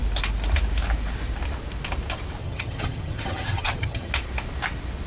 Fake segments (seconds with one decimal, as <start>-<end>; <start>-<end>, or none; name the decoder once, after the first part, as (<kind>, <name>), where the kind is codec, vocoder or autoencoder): 2.4-4.1 (vocoder, HiFi-GAN)